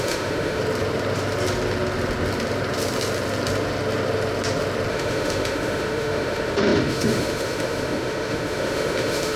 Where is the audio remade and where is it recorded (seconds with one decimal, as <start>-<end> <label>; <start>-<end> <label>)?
0.0-0.6 remade; 0.6-4.9 recorded; 4.9-9.4 remade